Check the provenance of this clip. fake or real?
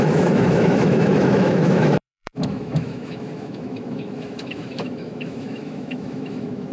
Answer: fake